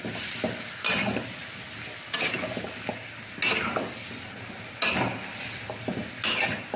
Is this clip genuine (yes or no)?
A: yes